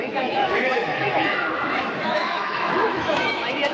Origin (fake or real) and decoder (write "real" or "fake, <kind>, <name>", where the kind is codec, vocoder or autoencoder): fake, autoencoder, DAC-VAE